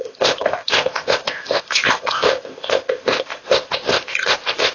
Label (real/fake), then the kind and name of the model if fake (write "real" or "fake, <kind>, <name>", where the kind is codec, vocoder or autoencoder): fake, codec, ZipCodec